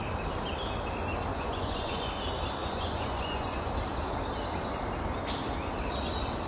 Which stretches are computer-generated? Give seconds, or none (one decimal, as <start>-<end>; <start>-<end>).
1.3-2.1; 2.6-3.7